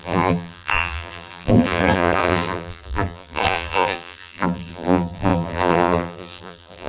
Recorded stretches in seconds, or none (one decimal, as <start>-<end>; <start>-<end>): none

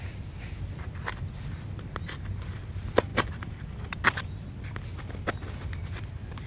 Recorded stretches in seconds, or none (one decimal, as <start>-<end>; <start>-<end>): 0.0-3.1; 5.0-6.5

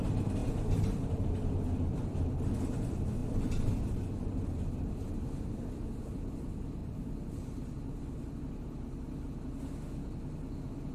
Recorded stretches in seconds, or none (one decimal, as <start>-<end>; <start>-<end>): 0.0-0.4; 1.3-3.2; 4.0-6.8; 8.4-10.9

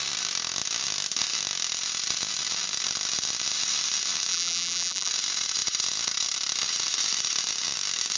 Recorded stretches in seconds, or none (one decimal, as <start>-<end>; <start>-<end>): 0.0-4.3; 5.1-8.2

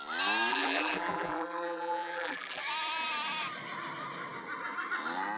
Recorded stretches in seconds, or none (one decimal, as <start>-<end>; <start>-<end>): 0.0-0.5; 2.6-5.4